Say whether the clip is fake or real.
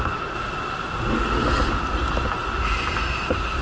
real